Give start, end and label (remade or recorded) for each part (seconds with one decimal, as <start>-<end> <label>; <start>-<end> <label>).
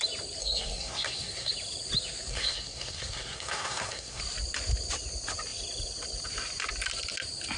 0.0-0.4 recorded; 0.4-1.5 remade; 1.5-2.3 recorded; 2.3-4.2 remade; 4.2-7.6 recorded